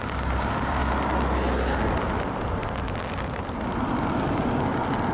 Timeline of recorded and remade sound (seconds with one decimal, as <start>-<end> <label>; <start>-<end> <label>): 0.0-0.8 remade; 0.8-1.8 recorded; 1.8-2.6 remade; 2.6-3.5 recorded; 3.5-5.1 remade